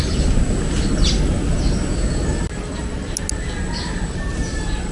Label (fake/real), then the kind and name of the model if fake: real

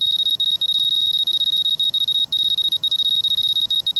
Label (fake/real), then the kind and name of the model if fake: fake, autoencoder, DAC-VAE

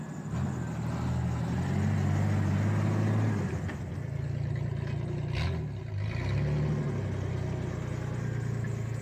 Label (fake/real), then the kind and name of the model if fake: real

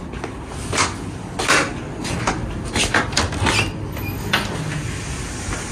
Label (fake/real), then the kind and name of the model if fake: real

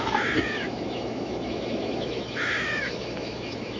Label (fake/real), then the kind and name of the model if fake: fake, autoencoder, DAC-VAE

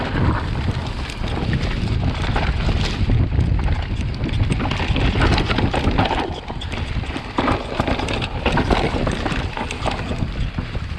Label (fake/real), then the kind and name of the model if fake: real